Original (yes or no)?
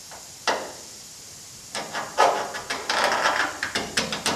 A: yes